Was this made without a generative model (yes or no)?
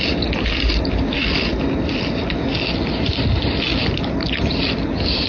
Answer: yes